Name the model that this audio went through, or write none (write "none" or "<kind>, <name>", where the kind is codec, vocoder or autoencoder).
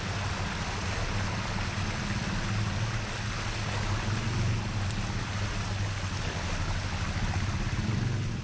none